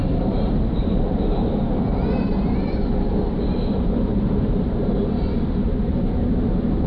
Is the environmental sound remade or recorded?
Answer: remade